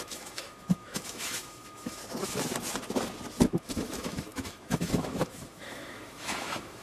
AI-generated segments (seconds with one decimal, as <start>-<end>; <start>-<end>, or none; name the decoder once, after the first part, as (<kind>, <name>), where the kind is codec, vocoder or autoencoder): 0.0-2.0 (autoencoder, DAC-VAE); 3.6-6.8